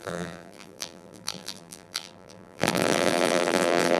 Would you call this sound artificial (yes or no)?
yes